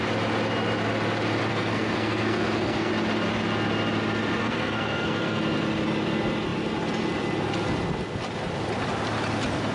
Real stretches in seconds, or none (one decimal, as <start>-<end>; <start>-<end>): 0.0-1.5; 2.9-4.4; 5.4-9.7